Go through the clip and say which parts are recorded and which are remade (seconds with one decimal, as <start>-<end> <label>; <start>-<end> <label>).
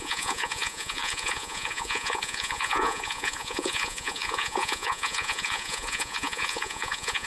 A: 0.0-7.3 remade